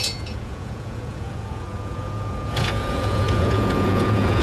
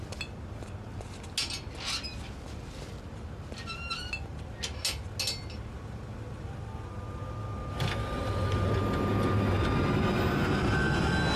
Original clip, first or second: second